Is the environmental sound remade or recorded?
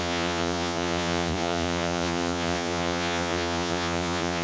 remade